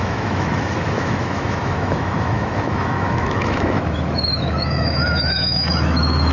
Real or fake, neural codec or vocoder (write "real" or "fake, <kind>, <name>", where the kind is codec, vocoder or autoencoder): fake, autoencoder, DAC-VAE